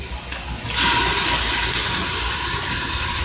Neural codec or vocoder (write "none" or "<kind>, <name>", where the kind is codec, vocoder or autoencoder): none